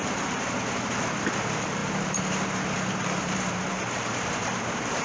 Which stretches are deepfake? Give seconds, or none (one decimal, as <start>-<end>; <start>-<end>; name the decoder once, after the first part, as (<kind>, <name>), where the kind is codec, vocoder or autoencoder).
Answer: 0.0-5.0 (vocoder, BigVGAN v2)